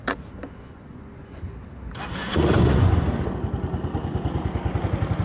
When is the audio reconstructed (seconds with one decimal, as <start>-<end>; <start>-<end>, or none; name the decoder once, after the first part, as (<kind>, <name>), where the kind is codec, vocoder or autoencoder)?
0.0-1.4 (vocoder, Vocos); 2.2-2.9